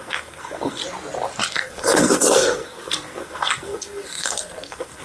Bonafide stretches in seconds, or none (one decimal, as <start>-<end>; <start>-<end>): 0.8-1.5